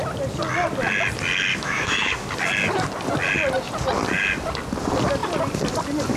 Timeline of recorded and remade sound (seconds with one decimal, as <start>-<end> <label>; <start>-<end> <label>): 0.0-1.5 recorded; 1.5-2.3 remade; 2.3-6.2 recorded